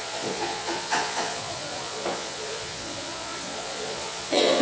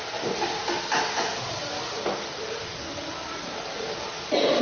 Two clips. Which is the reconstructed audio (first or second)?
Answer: first